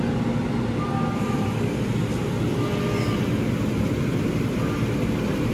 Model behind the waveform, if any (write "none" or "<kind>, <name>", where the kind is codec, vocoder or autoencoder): none